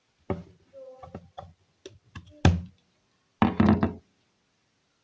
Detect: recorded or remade recorded